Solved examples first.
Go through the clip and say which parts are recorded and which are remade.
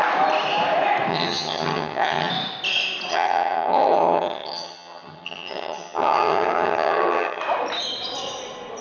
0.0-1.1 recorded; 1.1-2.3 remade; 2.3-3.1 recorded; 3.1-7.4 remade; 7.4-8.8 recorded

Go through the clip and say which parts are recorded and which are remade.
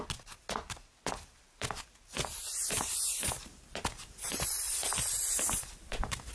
0.0-0.9 recorded; 0.9-1.9 remade; 1.9-2.4 recorded; 2.4-6.3 remade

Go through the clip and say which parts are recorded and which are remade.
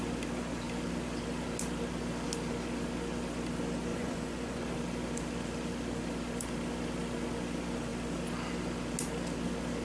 0.0-3.9 recorded; 3.9-4.7 remade; 4.7-9.8 recorded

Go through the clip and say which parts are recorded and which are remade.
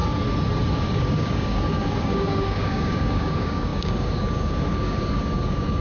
0.0-0.8 recorded; 0.8-5.8 remade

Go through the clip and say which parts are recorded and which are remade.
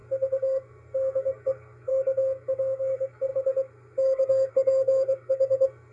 0.0-5.9 remade